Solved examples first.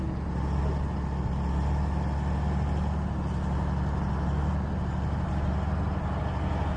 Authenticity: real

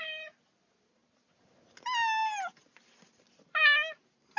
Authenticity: real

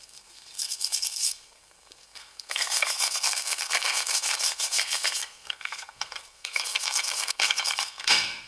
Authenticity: fake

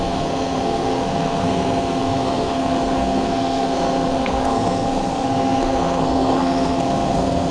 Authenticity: fake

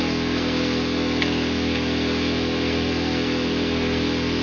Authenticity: fake